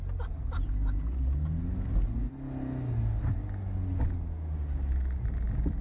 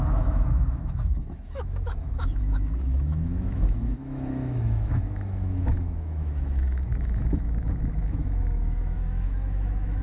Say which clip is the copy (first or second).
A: second